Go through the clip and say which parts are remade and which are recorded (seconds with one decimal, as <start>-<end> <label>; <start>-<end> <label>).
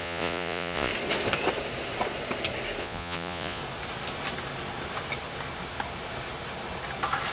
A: 0.0-0.9 remade; 0.9-2.8 recorded; 2.8-3.6 remade; 3.6-7.3 recorded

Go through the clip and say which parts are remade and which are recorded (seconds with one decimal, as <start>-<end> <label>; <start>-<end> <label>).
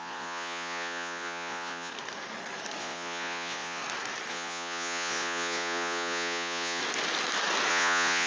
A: 0.0-1.9 remade; 1.9-2.8 recorded; 2.8-3.8 remade; 3.8-4.3 recorded; 4.3-6.8 remade; 6.8-7.7 recorded; 7.7-8.3 remade